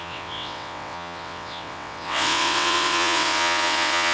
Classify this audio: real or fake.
fake